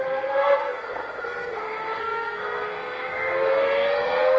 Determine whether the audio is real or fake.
fake